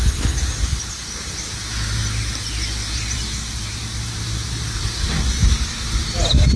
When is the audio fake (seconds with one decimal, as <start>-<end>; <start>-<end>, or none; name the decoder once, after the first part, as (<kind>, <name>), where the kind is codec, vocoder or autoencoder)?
0.7-1.3 (vocoder, BigVGAN v2); 2.8-5.9